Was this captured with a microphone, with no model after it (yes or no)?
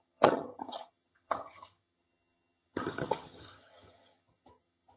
no